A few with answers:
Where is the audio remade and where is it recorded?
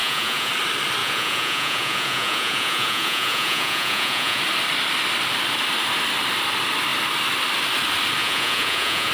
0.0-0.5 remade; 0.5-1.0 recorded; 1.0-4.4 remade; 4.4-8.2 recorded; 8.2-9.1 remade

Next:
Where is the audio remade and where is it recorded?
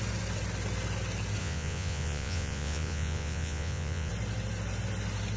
0.0-1.4 recorded; 1.4-4.1 remade; 4.1-5.4 recorded